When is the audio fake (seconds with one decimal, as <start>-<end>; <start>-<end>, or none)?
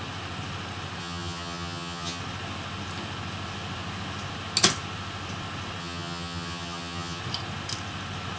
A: 1.0-2.2; 5.8-7.2